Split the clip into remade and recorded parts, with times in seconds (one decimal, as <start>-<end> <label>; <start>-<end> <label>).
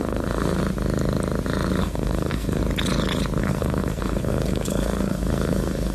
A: 0.0-0.6 remade; 0.6-1.8 recorded; 1.8-2.6 remade; 2.6-3.4 recorded; 3.4-5.9 remade